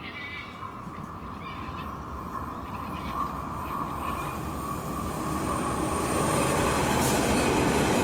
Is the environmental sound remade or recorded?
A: recorded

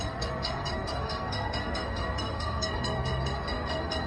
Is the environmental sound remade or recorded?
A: remade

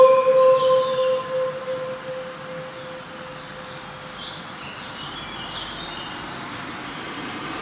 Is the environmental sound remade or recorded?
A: recorded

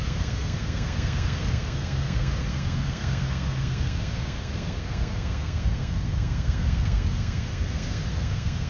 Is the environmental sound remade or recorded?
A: remade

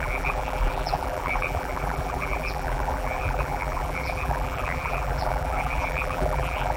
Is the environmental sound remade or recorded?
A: remade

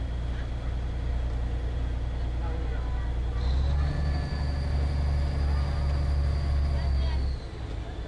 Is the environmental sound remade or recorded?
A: recorded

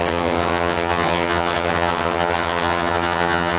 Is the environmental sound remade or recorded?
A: remade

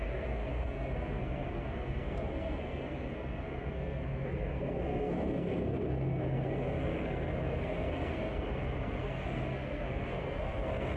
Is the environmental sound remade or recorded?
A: remade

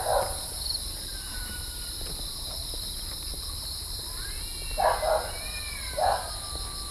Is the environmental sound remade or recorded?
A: recorded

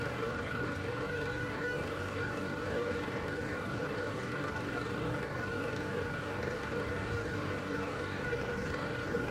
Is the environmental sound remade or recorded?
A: remade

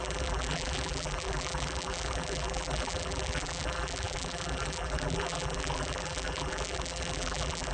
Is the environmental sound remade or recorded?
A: remade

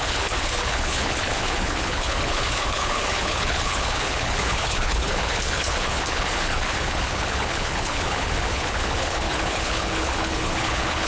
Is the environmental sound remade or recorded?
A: remade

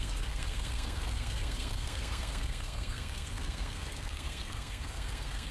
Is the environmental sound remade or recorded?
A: remade